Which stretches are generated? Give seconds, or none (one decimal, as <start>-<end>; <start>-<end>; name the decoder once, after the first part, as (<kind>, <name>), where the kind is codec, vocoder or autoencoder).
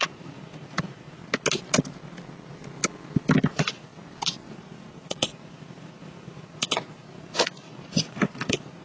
0.0-1.2 (vocoder, Vocos); 3.5-3.9; 4.5-8.8